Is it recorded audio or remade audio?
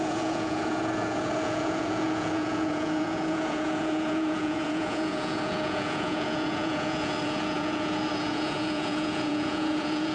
remade